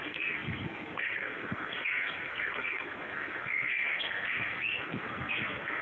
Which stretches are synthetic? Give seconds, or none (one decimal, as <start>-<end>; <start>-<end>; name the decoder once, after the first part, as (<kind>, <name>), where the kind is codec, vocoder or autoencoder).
0.0-5.8 (codec, SNAC)